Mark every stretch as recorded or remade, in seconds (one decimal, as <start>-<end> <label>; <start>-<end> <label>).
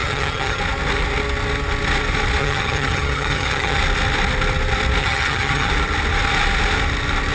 0.0-0.6 remade; 0.6-2.4 recorded; 2.4-3.8 remade; 3.8-5.0 recorded; 5.0-5.7 remade; 5.7-7.3 recorded